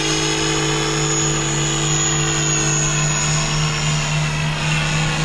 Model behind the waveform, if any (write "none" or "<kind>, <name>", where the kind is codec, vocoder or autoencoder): none